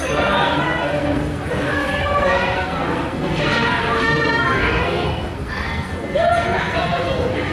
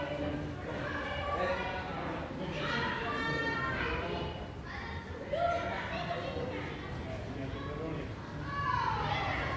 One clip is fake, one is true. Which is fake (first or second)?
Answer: first